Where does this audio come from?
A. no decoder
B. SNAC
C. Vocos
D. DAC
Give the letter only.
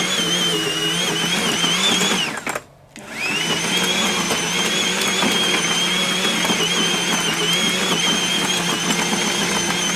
A